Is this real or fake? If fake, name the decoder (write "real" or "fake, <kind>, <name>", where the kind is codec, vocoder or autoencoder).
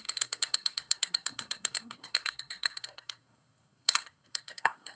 fake, codec, SNAC